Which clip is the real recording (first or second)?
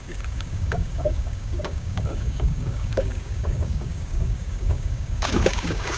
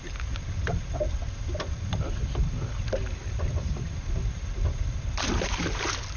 second